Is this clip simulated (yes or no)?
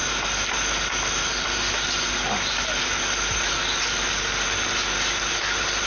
no